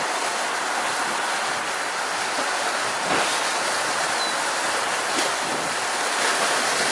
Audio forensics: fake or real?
real